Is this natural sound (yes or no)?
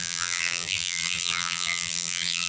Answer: no